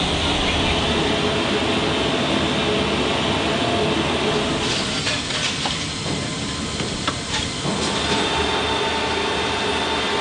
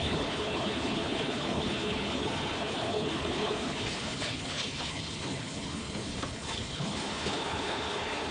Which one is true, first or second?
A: first